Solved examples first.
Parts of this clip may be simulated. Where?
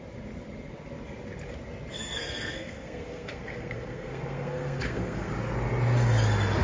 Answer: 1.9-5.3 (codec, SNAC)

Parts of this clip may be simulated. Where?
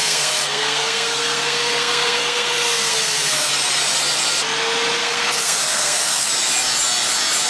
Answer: 0.0-3.5 (codec, SNAC); 5.0-6.3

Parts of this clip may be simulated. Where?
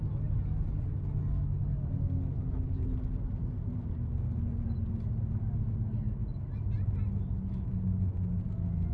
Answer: none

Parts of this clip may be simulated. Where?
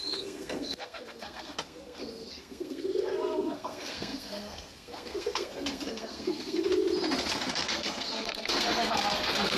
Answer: 0.0-6.7 (codec, SNAC); 7.3-9.6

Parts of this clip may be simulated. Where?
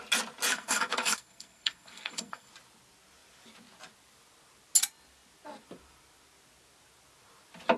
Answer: 0.5-2.5 (codec, SNAC)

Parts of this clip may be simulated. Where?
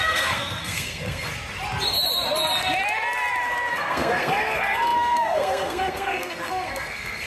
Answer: 0.0-1.3 (codec, SNAC); 3.7-7.3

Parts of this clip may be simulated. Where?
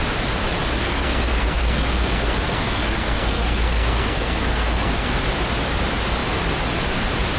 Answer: 0.8-5.2 (codec, SNAC)